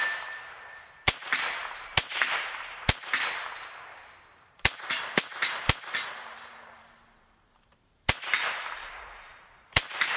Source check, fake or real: fake